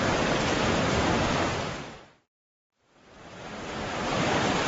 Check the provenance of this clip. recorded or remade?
remade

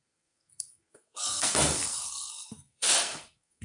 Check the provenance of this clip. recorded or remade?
remade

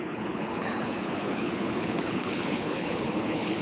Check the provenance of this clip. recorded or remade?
remade